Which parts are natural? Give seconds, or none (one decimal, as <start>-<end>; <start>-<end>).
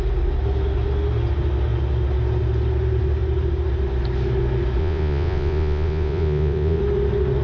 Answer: 0.0-4.8; 6.8-7.4